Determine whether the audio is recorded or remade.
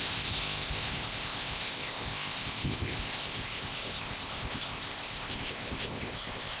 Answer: remade